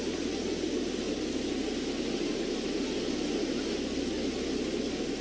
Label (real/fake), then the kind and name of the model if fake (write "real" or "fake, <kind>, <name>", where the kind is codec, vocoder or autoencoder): real